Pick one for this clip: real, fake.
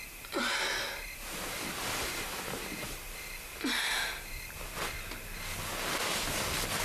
real